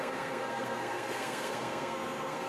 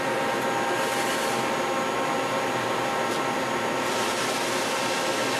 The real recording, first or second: second